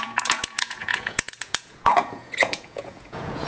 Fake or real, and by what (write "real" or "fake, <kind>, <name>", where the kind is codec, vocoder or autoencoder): fake, vocoder, Vocos